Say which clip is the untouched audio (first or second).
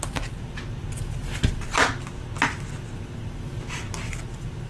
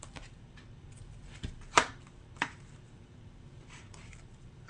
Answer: first